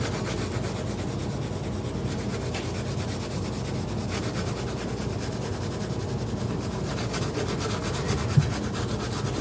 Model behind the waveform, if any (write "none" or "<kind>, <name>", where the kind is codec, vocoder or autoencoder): none